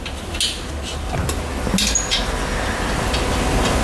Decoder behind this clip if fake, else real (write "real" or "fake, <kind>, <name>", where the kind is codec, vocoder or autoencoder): real